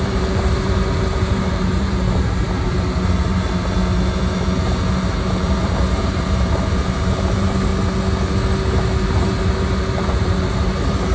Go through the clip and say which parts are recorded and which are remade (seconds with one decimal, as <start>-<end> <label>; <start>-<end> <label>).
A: 0.0-7.7 remade; 7.7-8.7 recorded; 8.7-11.1 remade